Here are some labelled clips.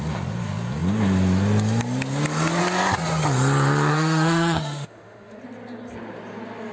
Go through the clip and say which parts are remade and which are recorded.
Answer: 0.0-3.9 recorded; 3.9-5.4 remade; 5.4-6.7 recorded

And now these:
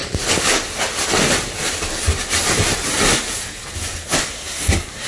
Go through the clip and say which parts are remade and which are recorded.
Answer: 0.0-4.2 recorded; 4.2-5.1 remade

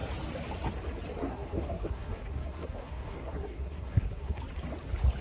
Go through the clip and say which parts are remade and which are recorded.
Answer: 0.0-1.3 recorded; 1.3-4.4 remade; 4.4-5.2 recorded

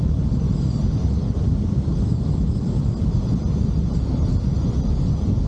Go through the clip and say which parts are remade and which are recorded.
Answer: 0.0-5.5 recorded

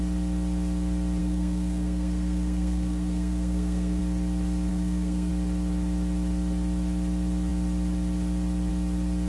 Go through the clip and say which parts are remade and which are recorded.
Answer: 0.0-1.2 recorded; 1.2-4.0 remade; 4.0-4.7 recorded; 4.7-5.3 remade; 5.3-9.3 recorded

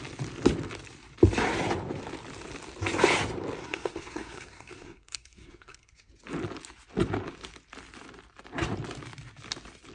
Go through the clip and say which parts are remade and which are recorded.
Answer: 0.0-3.6 recorded; 3.6-6.1 remade; 6.1-9.9 recorded

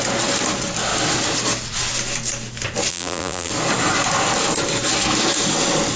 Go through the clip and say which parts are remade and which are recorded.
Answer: 0.0-2.9 recorded; 2.9-3.5 remade; 3.5-6.0 recorded